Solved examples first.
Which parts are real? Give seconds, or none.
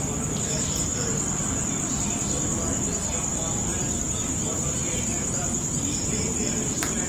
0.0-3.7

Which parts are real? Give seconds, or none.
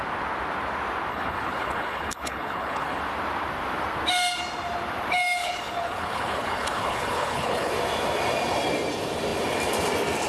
0.0-1.1; 3.0-5.4; 7.7-10.3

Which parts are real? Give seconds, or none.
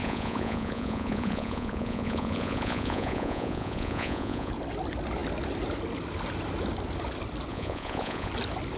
4.5-7.5; 8.3-8.8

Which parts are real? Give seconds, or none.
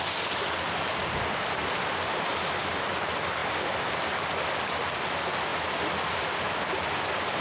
1.6-2.3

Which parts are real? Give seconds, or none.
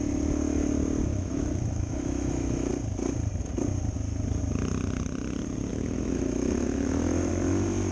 0.0-1.1; 2.7-5.7; 7.3-7.9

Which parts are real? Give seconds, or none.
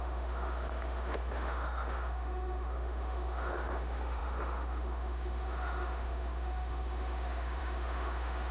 none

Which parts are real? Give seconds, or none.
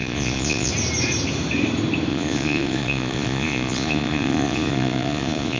0.7-2.1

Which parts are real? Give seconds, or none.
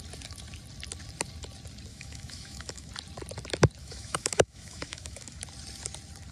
0.0-1.9; 2.9-3.8; 5.4-6.3